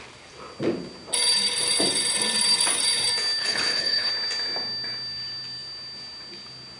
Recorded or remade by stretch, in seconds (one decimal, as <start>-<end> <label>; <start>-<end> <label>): 0.0-3.4 recorded; 3.4-4.1 remade; 4.1-6.8 recorded